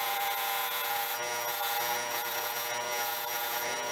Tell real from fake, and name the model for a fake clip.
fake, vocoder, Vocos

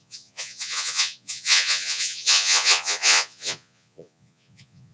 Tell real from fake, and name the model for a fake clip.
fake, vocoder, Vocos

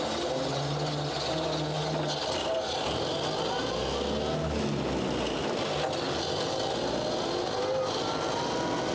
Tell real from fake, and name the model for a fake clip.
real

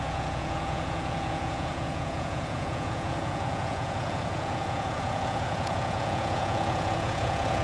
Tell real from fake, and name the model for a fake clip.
fake, vocoder, Vocos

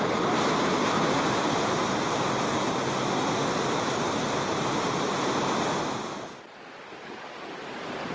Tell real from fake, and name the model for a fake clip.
real